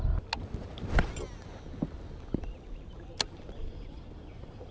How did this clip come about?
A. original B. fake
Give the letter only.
A